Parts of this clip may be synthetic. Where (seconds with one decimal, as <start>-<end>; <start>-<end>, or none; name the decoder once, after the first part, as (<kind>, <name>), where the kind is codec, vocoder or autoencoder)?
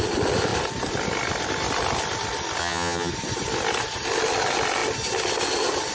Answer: 2.6-3.1 (vocoder, HiFi-GAN)